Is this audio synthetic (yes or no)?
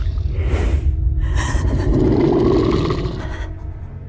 no